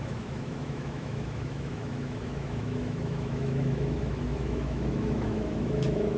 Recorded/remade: remade